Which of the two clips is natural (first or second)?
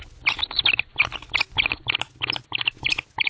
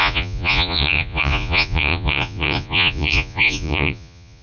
first